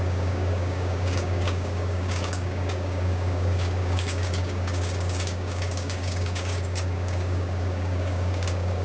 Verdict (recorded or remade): remade